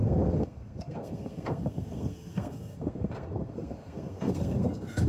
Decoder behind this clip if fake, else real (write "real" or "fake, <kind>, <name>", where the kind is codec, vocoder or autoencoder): fake, codec, SNAC